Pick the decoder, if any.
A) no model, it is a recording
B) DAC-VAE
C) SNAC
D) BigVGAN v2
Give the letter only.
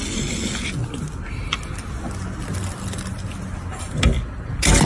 A